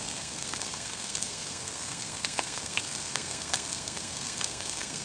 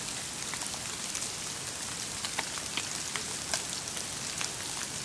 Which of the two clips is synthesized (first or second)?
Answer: first